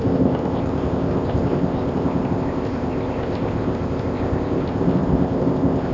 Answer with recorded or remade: remade